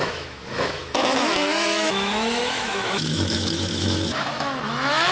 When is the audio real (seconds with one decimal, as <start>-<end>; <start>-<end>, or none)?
none